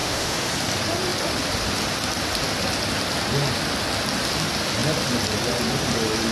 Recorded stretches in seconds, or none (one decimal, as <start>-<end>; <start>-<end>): 0.5-6.3